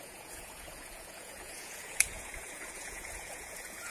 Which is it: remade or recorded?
remade